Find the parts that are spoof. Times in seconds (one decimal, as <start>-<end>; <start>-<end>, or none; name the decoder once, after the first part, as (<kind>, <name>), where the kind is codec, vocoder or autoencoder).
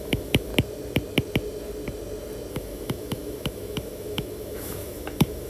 0.0-0.5 (autoencoder, DAC-VAE); 2.5-5.5